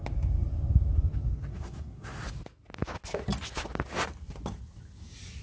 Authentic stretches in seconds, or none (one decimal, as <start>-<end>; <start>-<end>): 0.0-1.5; 2.2-5.4